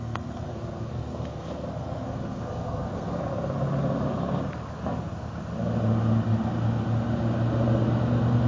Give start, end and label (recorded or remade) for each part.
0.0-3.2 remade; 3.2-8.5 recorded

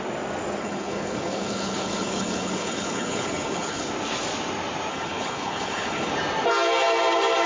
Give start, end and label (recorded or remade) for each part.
0.0-0.6 recorded; 0.6-3.9 remade; 3.9-4.9 recorded; 4.9-6.1 remade; 6.1-7.5 recorded

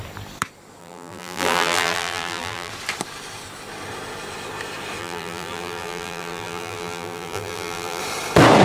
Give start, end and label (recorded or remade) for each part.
0.0-0.8 recorded; 0.8-2.7 remade; 2.7-5.0 recorded; 5.0-8.0 remade; 8.0-8.6 recorded